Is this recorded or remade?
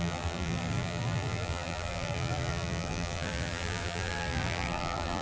remade